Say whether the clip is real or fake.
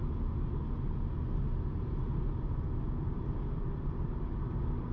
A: real